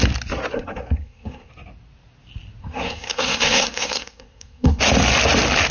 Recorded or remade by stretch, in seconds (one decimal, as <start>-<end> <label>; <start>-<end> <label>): 0.0-0.5 recorded; 0.5-1.5 remade; 1.5-2.6 recorded; 2.6-4.8 remade; 4.8-5.7 recorded